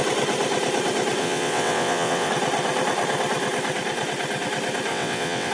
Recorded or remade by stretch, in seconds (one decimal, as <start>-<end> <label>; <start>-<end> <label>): 0.0-1.2 recorded; 1.2-2.3 remade; 2.3-4.9 recorded; 4.9-5.5 remade

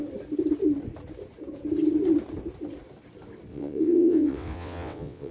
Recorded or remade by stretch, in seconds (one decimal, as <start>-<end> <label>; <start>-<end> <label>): 0.0-3.5 recorded; 3.5-5.3 remade

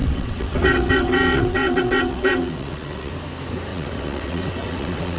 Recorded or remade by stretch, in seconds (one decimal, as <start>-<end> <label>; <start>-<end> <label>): 0.0-3.1 remade; 3.1-3.7 recorded; 3.7-5.2 remade

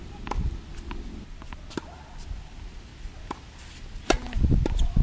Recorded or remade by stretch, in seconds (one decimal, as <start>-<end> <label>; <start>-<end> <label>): 0.0-5.0 recorded

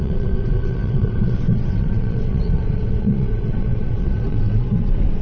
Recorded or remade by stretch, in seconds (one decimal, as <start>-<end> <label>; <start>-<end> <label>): 0.0-5.2 remade